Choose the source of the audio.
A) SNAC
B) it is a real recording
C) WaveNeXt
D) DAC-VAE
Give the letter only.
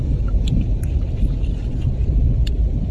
B